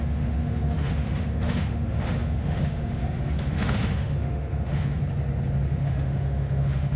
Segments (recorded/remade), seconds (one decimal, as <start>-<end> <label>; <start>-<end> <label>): 0.0-5.0 remade; 5.0-5.7 recorded; 5.7-7.0 remade